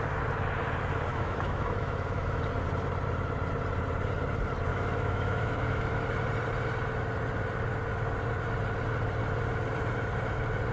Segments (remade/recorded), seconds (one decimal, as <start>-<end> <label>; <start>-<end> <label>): 0.0-1.1 recorded; 1.1-2.4 remade; 2.4-4.7 recorded; 4.7-6.0 remade; 6.0-10.7 recorded